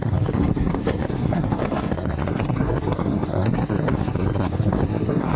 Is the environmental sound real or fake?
fake